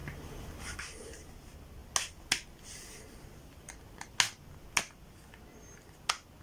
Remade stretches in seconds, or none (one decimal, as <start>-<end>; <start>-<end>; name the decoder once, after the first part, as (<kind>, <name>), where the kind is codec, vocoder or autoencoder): 0.0-0.8 (vocoder, BigVGAN v2)